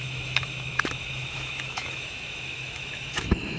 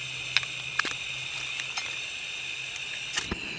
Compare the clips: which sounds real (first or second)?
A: second